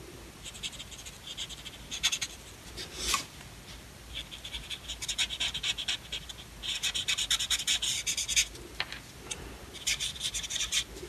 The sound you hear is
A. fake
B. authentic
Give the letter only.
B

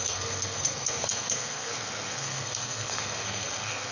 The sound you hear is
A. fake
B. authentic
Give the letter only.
A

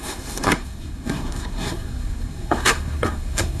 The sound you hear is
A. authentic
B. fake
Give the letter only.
B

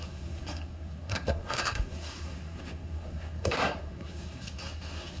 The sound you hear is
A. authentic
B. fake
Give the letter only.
B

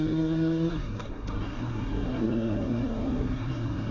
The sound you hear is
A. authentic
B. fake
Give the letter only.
B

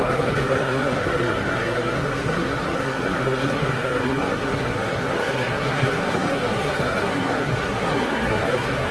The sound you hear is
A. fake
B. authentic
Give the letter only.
A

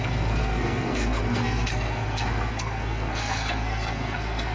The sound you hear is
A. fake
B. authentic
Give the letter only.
A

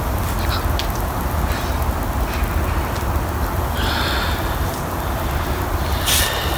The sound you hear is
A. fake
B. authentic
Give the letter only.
B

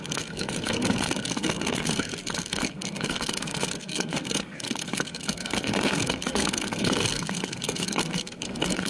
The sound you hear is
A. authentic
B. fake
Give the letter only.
B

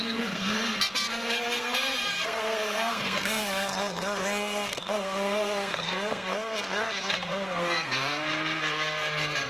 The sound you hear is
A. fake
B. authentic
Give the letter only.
A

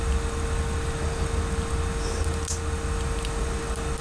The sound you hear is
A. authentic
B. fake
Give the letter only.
A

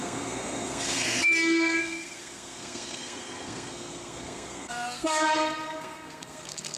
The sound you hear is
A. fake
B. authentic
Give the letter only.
A